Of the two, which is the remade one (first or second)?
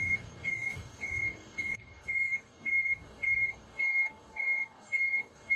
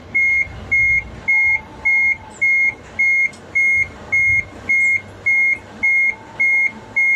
first